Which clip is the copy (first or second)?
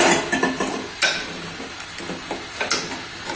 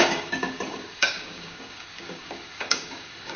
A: second